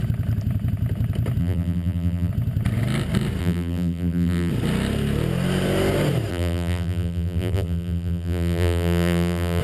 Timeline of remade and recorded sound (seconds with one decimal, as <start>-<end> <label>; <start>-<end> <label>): 0.0-1.4 recorded; 1.4-2.3 remade; 2.3-3.4 recorded; 3.4-4.5 remade; 4.5-6.3 recorded; 6.3-9.6 remade